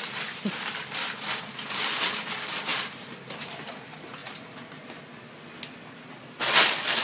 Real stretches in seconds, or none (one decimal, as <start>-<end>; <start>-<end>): 4.2-6.3